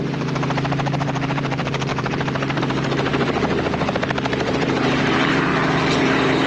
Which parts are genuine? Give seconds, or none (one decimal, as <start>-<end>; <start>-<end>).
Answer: 5.5-6.0